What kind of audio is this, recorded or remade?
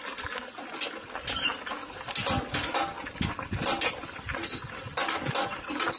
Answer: recorded